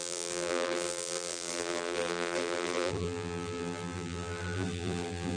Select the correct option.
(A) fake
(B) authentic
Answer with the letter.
A